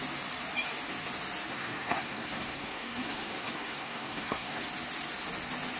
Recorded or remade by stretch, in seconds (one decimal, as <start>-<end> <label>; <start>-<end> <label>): 0.0-1.5 recorded; 1.5-4.6 remade; 4.6-5.8 recorded